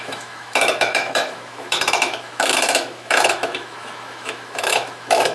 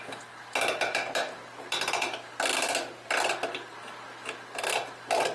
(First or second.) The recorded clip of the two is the second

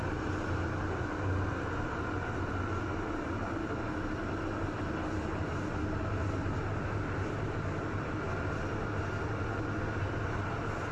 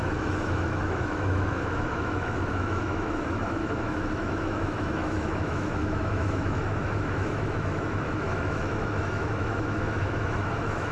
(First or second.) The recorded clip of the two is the first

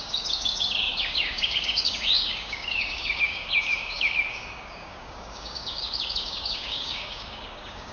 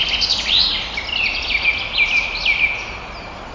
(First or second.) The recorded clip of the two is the second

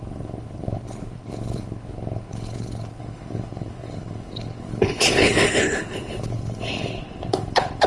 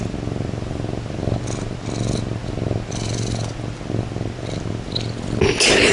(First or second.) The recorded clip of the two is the second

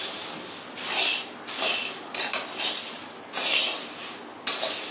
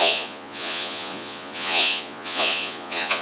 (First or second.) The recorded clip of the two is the first